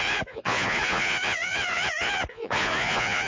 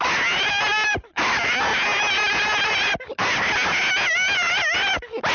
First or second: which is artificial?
first